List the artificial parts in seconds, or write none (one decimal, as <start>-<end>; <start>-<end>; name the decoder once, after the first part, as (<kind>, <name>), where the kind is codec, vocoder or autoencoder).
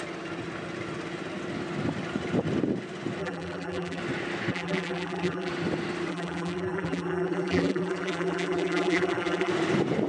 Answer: 3.2-4.0 (vocoder, BigVGAN v2); 4.5-5.5; 6.1-9.5